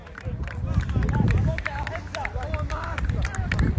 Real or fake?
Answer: real